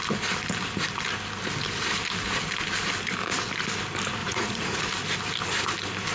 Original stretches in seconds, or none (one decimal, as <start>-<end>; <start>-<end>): 0.0-4.2; 4.8-6.1